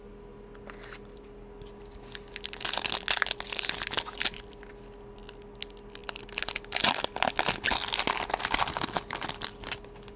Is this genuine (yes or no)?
yes